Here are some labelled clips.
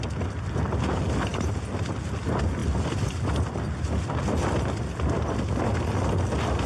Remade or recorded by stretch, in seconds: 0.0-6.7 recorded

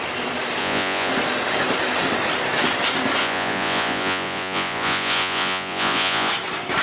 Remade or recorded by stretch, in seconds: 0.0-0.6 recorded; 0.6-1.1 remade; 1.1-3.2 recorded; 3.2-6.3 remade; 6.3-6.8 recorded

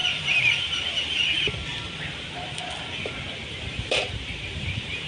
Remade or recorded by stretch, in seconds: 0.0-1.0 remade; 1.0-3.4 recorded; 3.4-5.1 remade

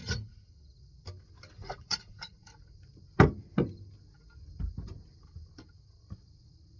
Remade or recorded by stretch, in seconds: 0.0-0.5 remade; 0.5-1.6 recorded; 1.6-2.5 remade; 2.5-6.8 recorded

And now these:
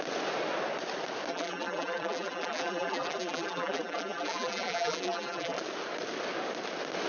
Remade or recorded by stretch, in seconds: 0.0-1.3 recorded; 1.3-5.6 remade; 5.6-7.1 recorded

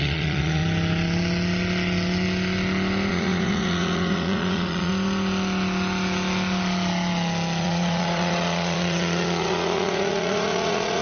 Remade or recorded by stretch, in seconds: 0.0-0.6 remade; 0.6-3.1 recorded; 3.1-4.9 remade; 4.9-7.6 recorded; 7.6-11.0 remade

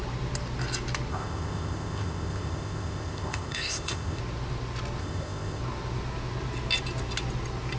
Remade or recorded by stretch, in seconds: 0.0-1.1 recorded; 1.1-4.2 remade; 4.2-5.0 recorded; 5.0-5.6 remade; 5.6-7.8 recorded